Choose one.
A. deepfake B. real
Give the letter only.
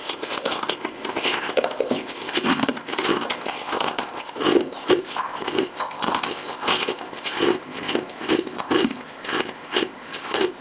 A